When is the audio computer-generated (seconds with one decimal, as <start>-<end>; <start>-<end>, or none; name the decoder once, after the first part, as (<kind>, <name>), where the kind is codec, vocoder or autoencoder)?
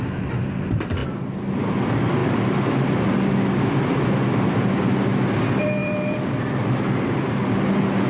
1.0-1.5 (vocoder, BigVGAN v2); 5.8-6.6